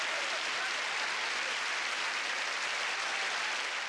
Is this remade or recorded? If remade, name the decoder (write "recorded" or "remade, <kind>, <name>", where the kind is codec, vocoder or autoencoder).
recorded